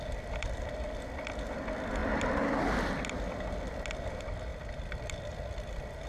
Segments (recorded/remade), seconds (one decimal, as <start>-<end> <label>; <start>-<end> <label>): 0.0-2.0 recorded; 2.0-2.6 remade; 2.6-4.5 recorded; 4.5-6.1 remade